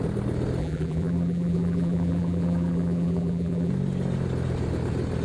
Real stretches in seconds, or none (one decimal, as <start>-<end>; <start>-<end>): 0.0-0.6; 3.7-5.2